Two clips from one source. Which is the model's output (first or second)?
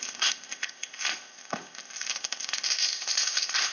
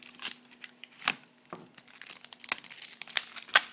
first